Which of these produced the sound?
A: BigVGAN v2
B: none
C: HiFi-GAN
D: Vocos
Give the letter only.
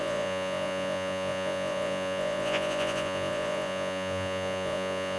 D